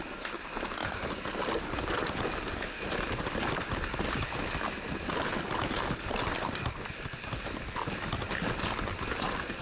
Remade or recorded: recorded